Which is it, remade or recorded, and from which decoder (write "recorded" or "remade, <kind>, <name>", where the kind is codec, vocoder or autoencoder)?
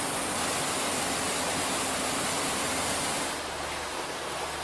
recorded